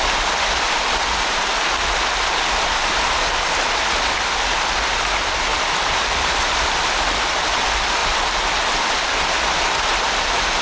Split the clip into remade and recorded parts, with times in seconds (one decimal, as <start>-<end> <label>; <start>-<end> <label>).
0.0-5.5 recorded; 5.5-7.2 remade; 7.2-9.9 recorded; 9.9-10.6 remade